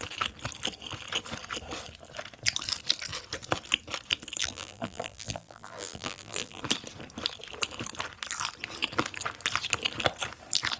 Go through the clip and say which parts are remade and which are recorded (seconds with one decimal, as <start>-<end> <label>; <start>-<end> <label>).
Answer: 0.0-4.4 recorded; 4.4-6.6 remade; 6.6-10.8 recorded